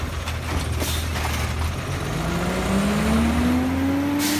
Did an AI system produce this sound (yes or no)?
no